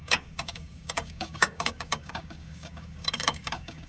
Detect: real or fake fake